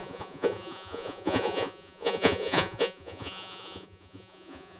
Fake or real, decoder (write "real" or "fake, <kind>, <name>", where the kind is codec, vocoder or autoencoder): fake, vocoder, Vocos